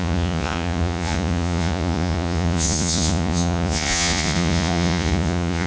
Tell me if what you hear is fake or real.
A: fake